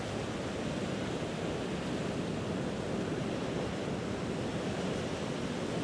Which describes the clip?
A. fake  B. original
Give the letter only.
B